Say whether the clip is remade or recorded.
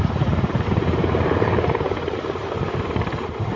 remade